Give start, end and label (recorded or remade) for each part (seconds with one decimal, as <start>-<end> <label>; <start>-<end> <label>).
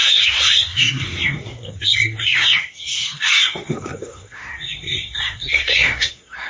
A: 0.0-6.5 remade